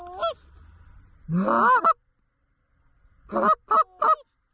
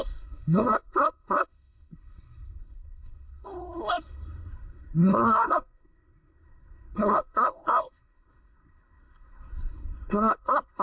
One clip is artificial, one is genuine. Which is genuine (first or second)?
first